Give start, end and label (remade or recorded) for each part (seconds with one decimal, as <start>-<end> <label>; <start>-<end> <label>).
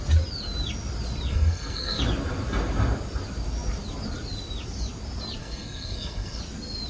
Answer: 0.0-1.3 recorded; 1.3-2.0 remade; 2.0-5.4 recorded; 5.4-6.4 remade; 6.4-6.9 recorded